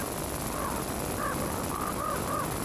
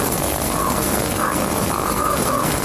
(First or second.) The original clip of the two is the first